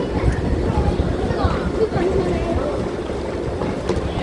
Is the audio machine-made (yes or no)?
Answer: no